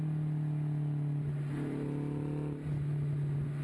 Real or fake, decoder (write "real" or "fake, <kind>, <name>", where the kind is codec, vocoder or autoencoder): real